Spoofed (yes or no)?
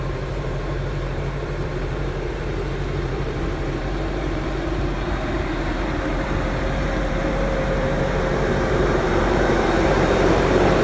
yes